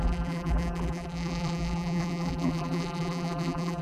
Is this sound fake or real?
fake